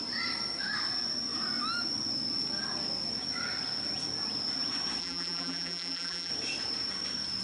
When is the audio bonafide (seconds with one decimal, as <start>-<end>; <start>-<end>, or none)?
0.0-5.0; 6.3-7.4

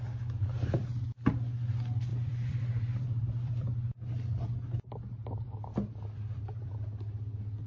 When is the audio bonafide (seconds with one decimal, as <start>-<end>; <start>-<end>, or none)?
0.0-2.1; 6.7-7.7

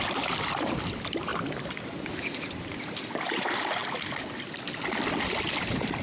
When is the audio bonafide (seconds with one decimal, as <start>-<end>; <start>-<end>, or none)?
1.3-2.1; 3.8-5.2

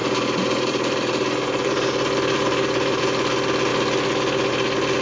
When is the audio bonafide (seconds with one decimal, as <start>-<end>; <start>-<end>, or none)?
3.0-5.0

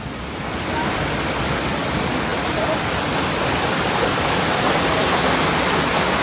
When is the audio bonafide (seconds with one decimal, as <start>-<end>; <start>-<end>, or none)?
0.0-6.2

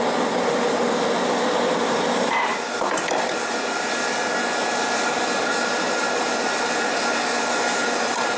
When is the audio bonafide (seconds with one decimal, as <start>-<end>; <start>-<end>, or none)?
0.0-8.4

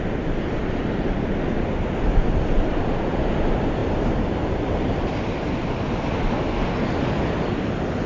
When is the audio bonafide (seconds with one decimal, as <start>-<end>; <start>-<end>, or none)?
0.0-8.1